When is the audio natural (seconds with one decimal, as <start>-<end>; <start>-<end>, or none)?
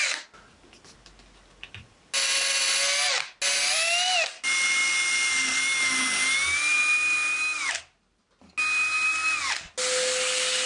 0.0-10.7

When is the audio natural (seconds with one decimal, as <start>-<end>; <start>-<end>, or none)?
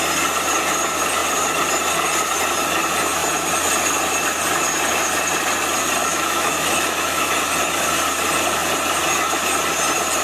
0.0-6.0; 7.3-10.2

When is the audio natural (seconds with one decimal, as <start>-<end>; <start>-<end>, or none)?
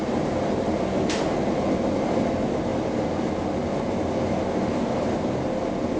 0.0-6.0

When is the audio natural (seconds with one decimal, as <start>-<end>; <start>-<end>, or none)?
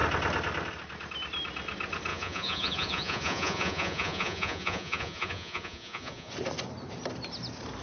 0.0-2.1; 6.3-7.8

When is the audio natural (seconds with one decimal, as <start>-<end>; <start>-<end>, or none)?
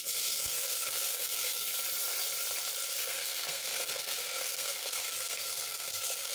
1.7-2.9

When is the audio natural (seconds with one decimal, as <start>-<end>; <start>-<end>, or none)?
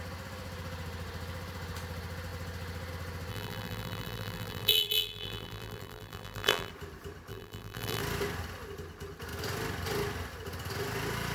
0.0-3.3; 6.7-7.3; 8.0-11.3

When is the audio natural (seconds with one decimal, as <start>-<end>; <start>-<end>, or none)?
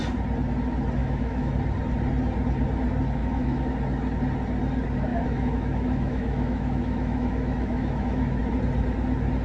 0.0-1.0; 1.5-3.2; 3.7-5.1; 8.4-9.4